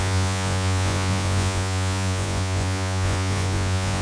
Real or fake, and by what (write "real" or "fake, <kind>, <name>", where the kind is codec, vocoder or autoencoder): fake, vocoder, Vocos